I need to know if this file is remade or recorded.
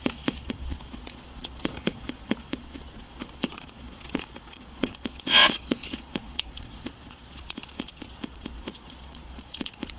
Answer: remade